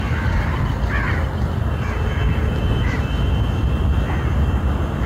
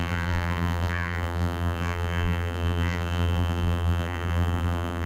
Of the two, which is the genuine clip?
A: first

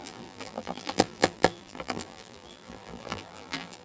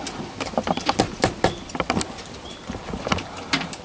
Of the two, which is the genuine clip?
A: second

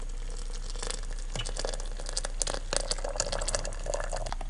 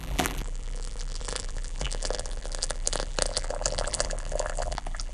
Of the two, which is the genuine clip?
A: first